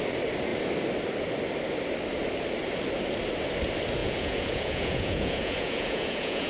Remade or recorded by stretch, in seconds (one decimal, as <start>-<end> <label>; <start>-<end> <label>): 0.0-4.0 recorded; 4.0-6.5 remade